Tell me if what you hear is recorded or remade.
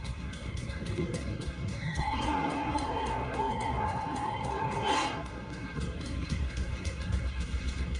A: remade